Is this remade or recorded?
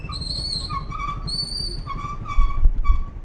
recorded